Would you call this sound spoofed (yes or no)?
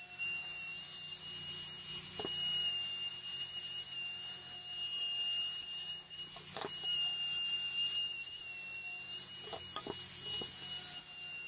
no